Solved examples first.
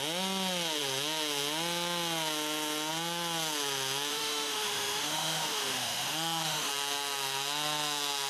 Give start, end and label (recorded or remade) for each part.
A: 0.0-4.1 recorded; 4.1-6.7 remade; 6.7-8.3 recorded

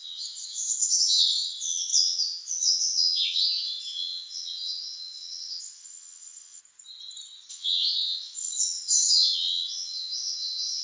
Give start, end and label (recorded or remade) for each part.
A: 0.0-6.6 remade; 6.6-7.5 recorded; 7.5-10.8 remade

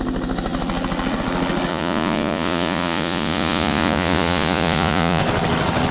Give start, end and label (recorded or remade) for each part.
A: 0.0-1.7 recorded; 1.7-5.2 remade; 5.2-5.9 recorded

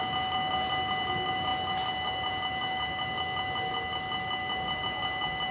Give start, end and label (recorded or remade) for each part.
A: 0.0-5.5 recorded

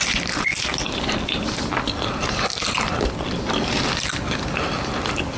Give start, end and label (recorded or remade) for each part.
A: 0.0-5.4 recorded

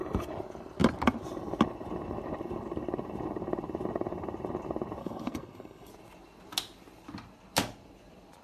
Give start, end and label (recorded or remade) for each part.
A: 0.0-5.0 recorded; 5.0-5.9 remade; 5.9-8.4 recorded

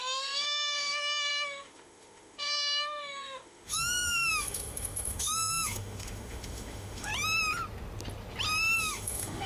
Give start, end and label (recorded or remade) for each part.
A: 0.0-7.1 remade; 7.1-8.8 recorded; 8.8-9.5 remade

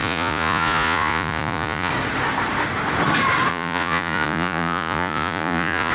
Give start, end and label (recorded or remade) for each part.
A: 0.0-1.9 remade; 1.9-3.5 recorded; 3.5-5.9 remade